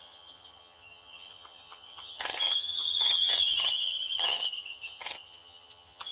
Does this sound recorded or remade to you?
remade